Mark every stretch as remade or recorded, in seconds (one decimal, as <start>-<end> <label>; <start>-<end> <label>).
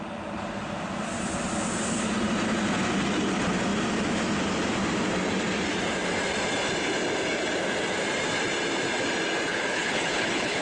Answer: 0.0-9.5 recorded; 9.5-10.6 remade